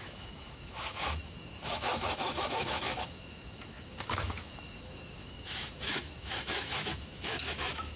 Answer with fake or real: fake